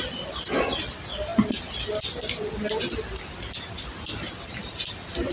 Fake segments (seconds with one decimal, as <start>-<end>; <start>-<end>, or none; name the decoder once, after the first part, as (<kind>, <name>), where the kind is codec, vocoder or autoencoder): 4.6-5.3 (vocoder, BigVGAN v2)